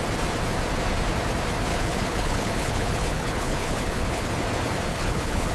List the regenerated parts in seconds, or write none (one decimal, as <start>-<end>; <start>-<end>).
1.7-4.3; 4.9-5.5